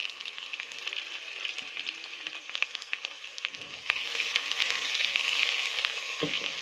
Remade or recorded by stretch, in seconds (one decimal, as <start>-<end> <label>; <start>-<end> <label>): 0.0-0.8 remade; 0.8-2.4 recorded; 2.4-6.6 remade